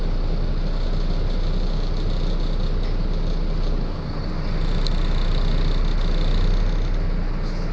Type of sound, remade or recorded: recorded